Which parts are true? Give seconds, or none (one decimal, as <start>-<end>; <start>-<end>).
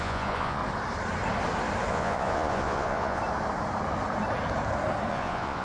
0.6-1.9; 3.2-5.1